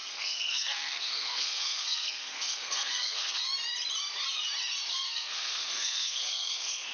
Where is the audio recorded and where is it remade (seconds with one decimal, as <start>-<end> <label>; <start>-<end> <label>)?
0.0-3.4 remade; 3.4-4.9 recorded; 4.9-6.9 remade